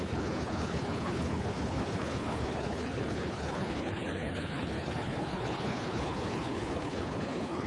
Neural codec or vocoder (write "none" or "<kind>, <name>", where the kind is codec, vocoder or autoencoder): codec, HILCodec